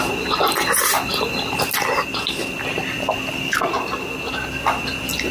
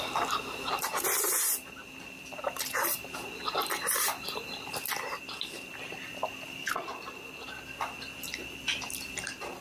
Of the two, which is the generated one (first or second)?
second